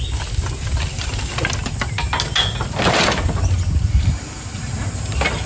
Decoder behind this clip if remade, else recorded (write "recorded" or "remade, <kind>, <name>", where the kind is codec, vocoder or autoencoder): recorded